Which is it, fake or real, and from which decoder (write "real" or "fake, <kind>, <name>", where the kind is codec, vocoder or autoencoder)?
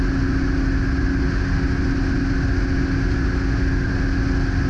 real